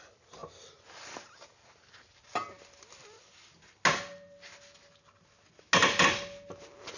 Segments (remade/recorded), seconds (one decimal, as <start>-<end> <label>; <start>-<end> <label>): 0.0-7.0 recorded